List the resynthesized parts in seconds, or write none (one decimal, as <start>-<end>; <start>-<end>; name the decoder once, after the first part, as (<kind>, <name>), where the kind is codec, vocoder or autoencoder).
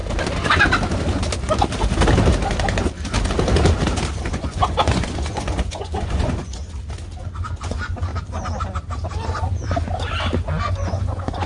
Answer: 4.3-6.6 (vocoder, Vocos); 7.6-8.1; 10.6-11.5